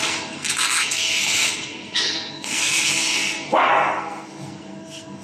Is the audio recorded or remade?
remade